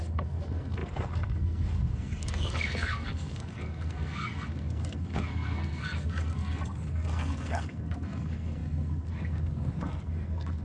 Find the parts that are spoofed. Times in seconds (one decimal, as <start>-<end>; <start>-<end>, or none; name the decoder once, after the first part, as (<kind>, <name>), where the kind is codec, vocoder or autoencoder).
0.0-10.6 (codec, SNAC)